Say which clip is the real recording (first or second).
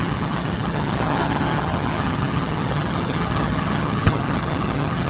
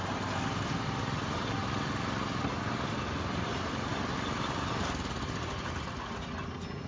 second